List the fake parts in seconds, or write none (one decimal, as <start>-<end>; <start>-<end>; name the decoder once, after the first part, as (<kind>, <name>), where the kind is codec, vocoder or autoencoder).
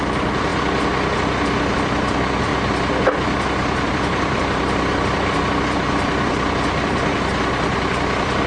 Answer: 0.0-0.5 (vocoder, BigVGAN v2); 1.7-2.5; 3.9-8.5